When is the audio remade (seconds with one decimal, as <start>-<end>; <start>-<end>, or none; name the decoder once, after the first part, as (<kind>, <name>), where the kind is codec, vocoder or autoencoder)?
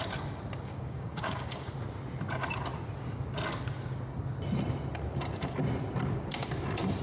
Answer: 0.7-1.7 (codec, DAC)